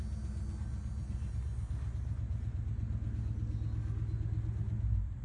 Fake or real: real